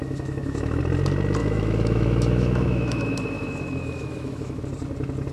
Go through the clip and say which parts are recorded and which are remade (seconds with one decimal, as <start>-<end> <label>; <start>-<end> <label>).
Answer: 0.0-0.8 remade; 0.8-1.4 recorded; 1.4-4.6 remade; 4.6-5.3 recorded